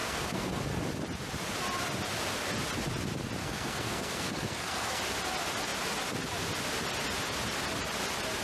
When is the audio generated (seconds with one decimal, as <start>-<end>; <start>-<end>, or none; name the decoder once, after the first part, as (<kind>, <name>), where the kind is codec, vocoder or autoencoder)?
0.0-0.6 (codec, SNAC); 3.4-5.0